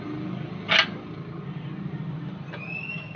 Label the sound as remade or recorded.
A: recorded